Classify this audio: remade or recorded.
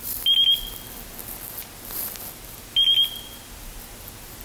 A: recorded